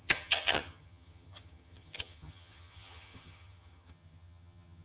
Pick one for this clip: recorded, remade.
remade